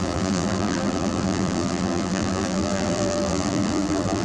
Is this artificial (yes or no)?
yes